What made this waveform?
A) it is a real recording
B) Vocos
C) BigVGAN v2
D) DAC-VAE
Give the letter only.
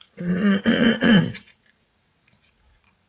B